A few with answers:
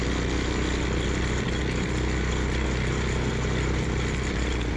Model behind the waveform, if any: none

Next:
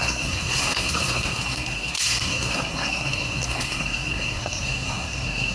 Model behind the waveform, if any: codec, SNAC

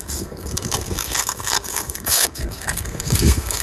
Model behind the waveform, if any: codec, SNAC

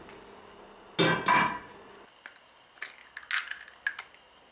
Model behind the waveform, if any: none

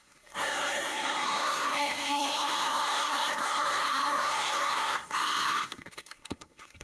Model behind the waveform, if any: codec, SNAC